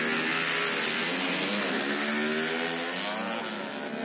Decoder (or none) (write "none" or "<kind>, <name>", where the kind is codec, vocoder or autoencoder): none